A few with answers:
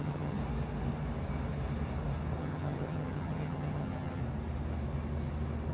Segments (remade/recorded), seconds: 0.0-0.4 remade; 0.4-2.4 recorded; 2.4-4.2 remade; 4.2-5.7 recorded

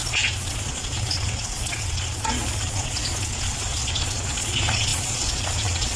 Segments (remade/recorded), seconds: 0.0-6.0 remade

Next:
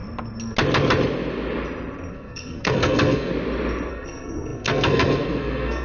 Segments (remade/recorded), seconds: 0.0-2.1 recorded; 2.1-3.3 remade; 3.3-3.9 recorded; 3.9-5.8 remade

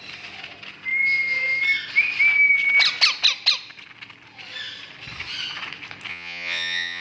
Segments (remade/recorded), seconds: 0.0-6.1 recorded; 6.1-7.0 remade

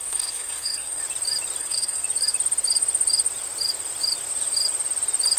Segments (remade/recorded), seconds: 0.0-1.0 remade; 1.0-1.6 recorded; 1.6-2.0 remade; 2.0-5.4 recorded

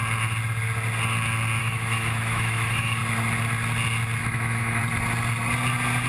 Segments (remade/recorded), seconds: 0.0-1.6 recorded; 1.6-3.0 remade; 3.0-4.2 recorded; 4.2-4.8 remade; 4.8-6.1 recorded

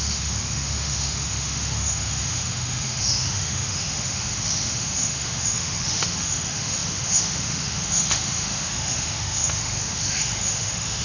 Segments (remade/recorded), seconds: 0.0-11.0 remade